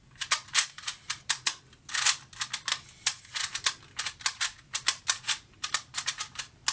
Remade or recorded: recorded